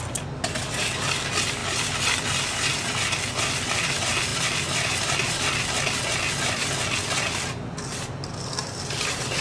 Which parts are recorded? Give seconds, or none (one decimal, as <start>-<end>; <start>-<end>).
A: 0.0-9.4